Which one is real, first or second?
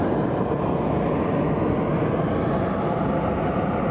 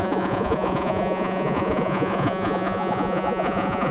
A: first